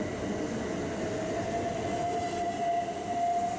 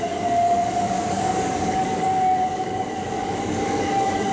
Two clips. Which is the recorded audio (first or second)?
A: first